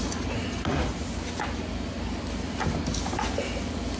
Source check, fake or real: real